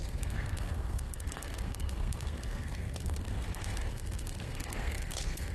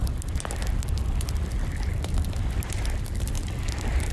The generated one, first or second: first